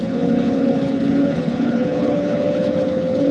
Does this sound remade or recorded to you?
remade